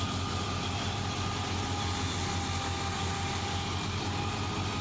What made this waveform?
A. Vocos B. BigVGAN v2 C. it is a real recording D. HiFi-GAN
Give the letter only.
C